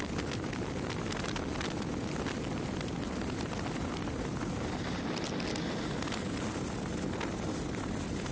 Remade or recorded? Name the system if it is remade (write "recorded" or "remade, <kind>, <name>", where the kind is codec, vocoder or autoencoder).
recorded